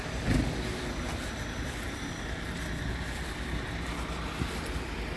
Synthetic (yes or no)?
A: no